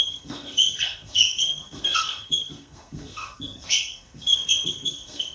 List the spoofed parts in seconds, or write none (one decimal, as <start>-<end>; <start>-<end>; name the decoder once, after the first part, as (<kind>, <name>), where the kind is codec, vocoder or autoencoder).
0.0-5.3 (codec, SNAC)